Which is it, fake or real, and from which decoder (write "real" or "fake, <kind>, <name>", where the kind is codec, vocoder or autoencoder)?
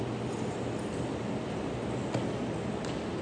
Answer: real